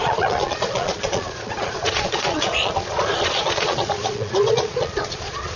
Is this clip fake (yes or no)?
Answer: yes